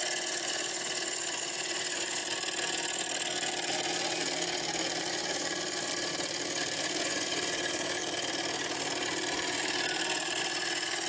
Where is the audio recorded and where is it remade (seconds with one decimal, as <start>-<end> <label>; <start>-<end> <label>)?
0.0-2.2 remade; 2.2-5.1 recorded; 5.1-5.9 remade; 5.9-6.8 recorded; 6.8-8.0 remade; 8.0-10.4 recorded; 10.4-11.1 remade